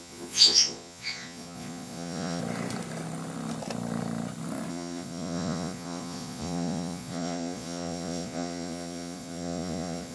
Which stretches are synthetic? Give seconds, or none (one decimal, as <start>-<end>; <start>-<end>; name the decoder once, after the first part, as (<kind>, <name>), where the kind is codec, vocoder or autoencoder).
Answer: 0.0-2.4 (vocoder, Vocos); 4.7-10.1

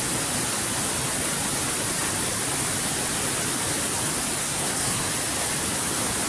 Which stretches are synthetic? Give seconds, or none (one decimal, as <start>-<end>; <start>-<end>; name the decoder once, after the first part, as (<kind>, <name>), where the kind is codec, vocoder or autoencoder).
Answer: 4.4-5.1 (codec, SNAC)